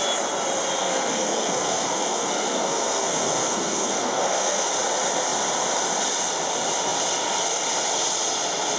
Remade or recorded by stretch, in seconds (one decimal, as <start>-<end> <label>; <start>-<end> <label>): 0.0-0.8 recorded; 0.8-4.7 remade; 4.7-8.8 recorded